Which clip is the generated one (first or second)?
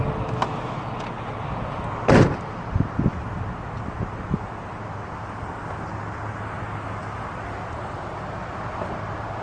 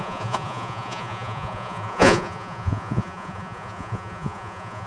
second